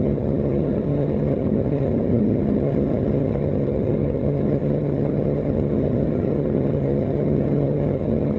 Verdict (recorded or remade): remade